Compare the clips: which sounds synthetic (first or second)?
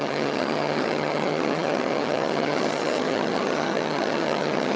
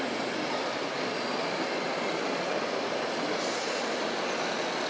first